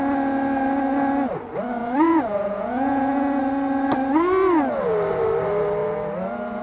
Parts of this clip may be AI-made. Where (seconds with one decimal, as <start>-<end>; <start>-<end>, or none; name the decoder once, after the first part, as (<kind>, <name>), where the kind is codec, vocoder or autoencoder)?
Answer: 1.8-3.4 (vocoder, Vocos)